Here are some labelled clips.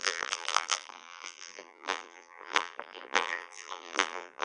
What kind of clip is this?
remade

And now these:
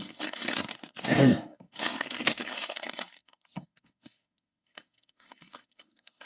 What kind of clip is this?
remade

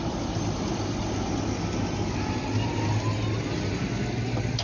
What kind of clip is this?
recorded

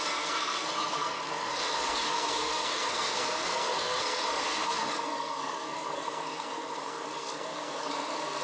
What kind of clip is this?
remade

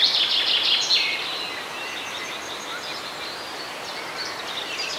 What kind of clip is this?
recorded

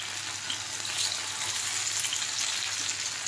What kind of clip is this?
recorded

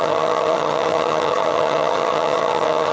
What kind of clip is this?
remade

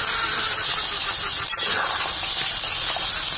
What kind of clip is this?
recorded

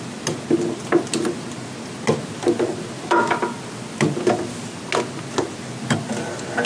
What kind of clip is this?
recorded